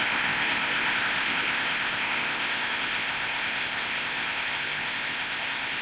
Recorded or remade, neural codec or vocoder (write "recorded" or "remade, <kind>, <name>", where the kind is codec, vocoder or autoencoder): remade, codec, ZipCodec